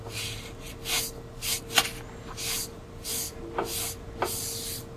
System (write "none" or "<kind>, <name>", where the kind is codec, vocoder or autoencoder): none